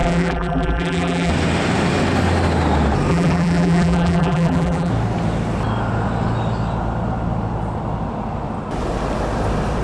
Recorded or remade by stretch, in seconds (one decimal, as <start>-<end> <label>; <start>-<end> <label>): 0.0-1.3 remade; 1.3-3.1 recorded; 3.1-4.9 remade; 4.9-9.8 recorded